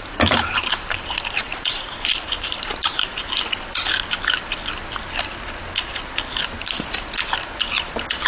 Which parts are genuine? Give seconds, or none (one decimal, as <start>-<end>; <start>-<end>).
3.1-8.3